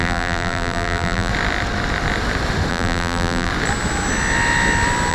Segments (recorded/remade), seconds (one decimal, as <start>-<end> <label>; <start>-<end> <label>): 0.0-1.3 remade; 1.3-2.7 recorded; 2.7-3.5 remade; 3.5-5.1 recorded